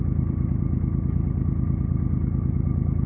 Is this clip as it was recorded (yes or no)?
yes